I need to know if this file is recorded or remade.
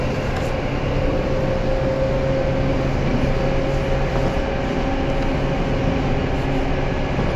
recorded